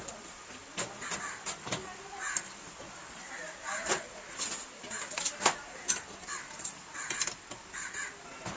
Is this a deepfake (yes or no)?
no